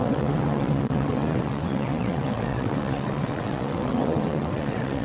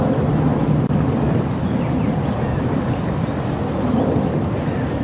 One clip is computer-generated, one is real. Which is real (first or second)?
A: second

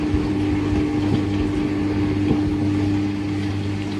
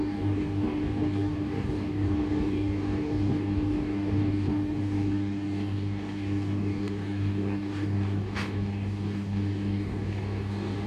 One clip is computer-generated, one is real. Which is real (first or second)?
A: first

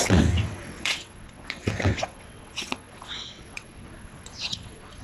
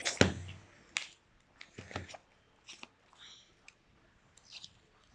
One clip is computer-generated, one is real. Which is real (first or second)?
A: second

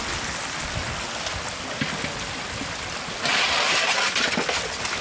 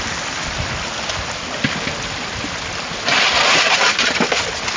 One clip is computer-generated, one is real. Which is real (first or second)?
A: first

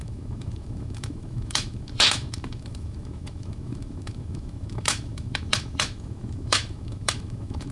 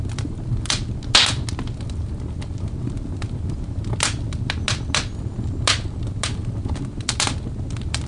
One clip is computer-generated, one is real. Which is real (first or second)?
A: second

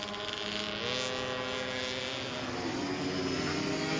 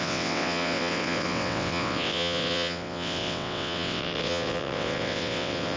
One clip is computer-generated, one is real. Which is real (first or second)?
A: first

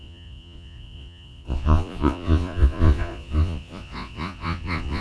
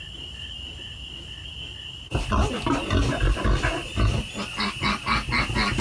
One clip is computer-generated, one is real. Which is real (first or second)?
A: second